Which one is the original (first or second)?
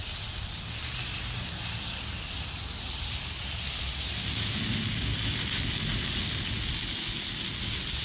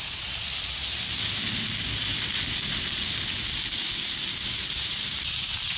first